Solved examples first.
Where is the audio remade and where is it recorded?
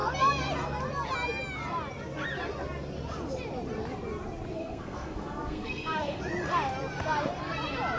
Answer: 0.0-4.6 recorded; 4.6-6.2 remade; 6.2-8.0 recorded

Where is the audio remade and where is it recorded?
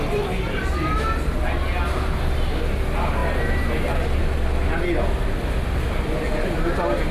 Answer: 0.0-7.1 recorded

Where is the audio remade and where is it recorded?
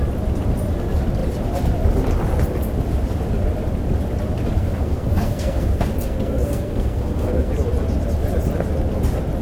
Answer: 0.0-4.6 recorded; 4.6-7.5 remade; 7.5-9.4 recorded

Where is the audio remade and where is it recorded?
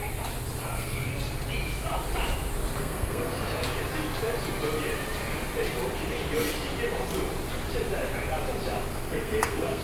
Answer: 0.0-0.6 recorded; 0.6-1.1 remade; 1.1-2.8 recorded; 2.8-3.4 remade; 3.4-8.9 recorded; 8.9-9.8 remade